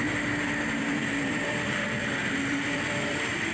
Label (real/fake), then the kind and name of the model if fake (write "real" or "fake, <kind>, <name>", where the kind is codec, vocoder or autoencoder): fake, vocoder, BigVGAN v2